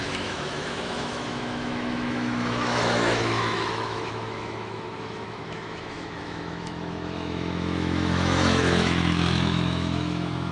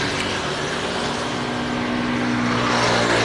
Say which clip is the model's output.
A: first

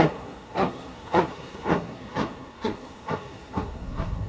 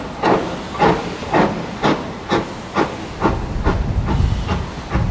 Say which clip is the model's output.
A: first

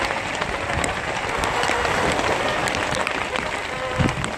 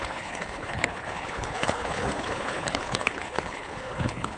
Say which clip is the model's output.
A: second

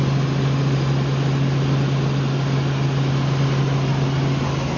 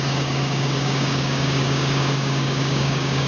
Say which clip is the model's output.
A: second